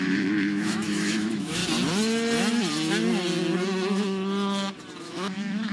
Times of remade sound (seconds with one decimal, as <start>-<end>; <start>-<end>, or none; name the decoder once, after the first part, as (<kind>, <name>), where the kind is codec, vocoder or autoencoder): 0.0-1.6 (autoencoder, DAC-VAE); 5.0-5.7